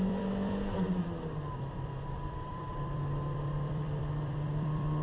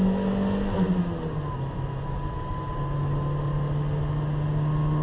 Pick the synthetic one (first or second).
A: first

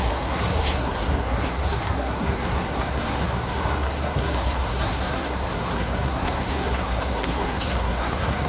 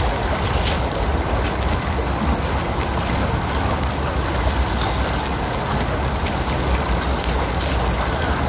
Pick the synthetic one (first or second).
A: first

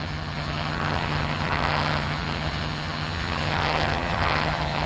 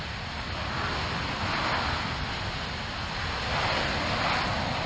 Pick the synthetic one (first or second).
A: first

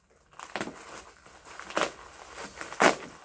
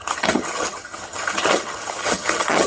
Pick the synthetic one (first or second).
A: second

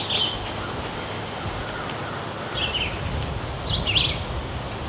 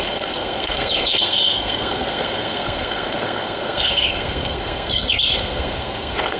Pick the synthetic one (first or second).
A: second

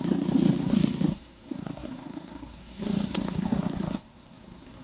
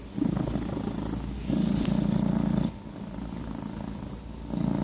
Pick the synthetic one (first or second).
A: first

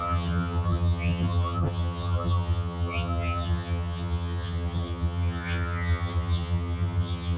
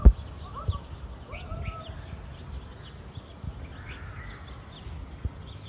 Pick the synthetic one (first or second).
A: first